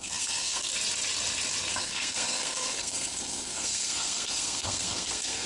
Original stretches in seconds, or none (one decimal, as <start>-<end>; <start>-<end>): 0.7-1.7